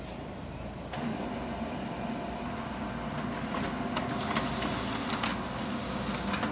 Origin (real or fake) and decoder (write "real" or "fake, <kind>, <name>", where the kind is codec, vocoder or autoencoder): real